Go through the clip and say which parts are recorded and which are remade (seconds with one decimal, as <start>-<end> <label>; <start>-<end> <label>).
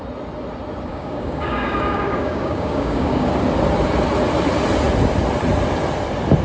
0.0-0.9 recorded; 0.9-3.3 remade; 3.3-6.4 recorded